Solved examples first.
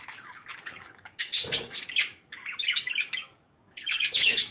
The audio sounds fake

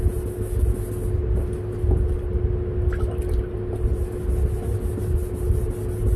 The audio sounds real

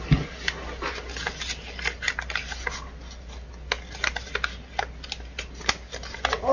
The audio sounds real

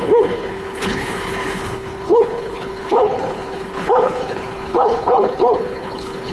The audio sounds fake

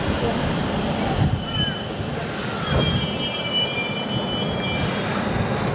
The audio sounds real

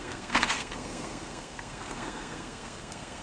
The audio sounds fake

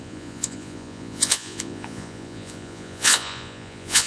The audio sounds fake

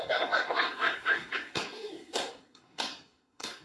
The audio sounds fake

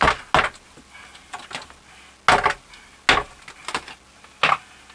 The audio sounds real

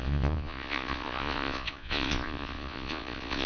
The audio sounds fake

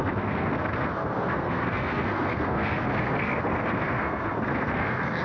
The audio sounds fake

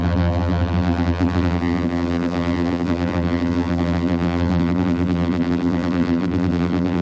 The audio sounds fake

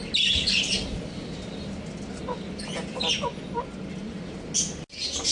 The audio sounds real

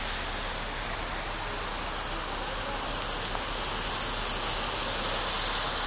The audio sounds real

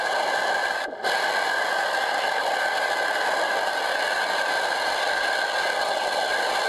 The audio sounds real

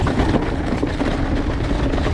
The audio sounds real